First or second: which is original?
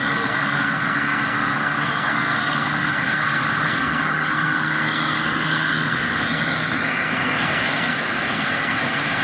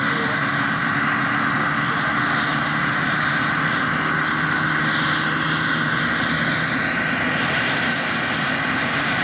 second